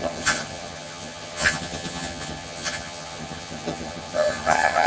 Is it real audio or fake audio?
fake